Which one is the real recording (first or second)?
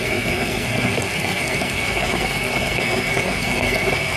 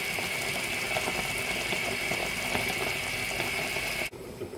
second